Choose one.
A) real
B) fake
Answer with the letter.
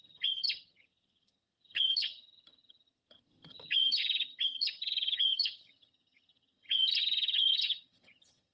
B